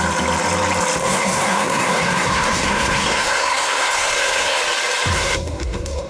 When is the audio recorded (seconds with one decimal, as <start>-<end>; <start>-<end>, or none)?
0.0-1.0; 4.6-5.1